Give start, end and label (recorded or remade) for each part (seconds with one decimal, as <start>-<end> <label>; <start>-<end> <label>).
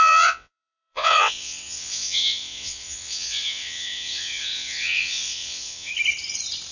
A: 0.0-5.9 remade; 5.9-6.7 recorded